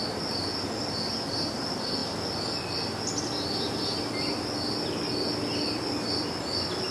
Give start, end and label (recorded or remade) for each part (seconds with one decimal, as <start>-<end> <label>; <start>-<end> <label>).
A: 0.0-6.9 recorded